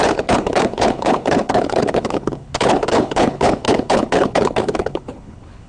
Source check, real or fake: fake